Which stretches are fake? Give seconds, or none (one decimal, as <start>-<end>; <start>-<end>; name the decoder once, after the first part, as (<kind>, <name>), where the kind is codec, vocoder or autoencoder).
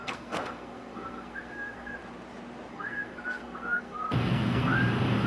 0.0-2.0 (codec, SNAC); 2.7-4.7